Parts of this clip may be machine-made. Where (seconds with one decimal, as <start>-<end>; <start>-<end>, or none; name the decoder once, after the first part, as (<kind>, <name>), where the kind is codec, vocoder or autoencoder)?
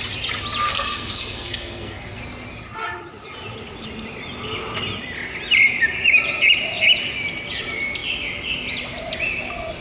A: 0.7-2.2 (codec, SNAC)